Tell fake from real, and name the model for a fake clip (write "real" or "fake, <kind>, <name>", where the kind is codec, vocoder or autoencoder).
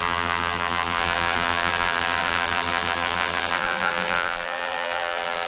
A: fake, vocoder, BigVGAN v2